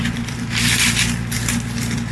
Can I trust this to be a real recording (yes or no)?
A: yes